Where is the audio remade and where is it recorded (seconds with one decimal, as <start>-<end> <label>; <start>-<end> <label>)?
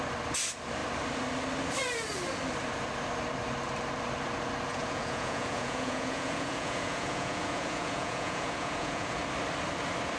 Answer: 0.0-4.7 recorded; 4.7-9.2 remade; 9.2-10.2 recorded